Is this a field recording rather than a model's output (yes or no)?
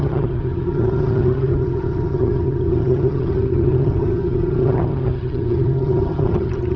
no